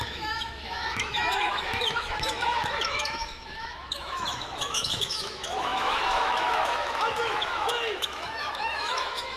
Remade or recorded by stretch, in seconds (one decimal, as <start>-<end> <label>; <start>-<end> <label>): 0.0-9.4 remade